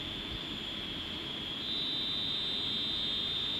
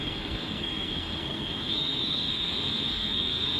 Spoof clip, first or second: second